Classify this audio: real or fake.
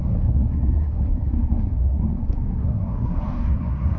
fake